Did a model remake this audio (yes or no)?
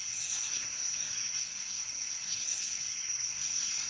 yes